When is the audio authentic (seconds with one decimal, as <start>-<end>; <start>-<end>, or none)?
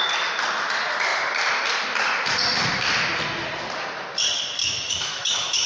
0.0-4.6